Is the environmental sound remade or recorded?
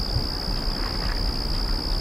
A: recorded